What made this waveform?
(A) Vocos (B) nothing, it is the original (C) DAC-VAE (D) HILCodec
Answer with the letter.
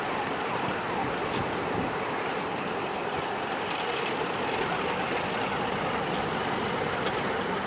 B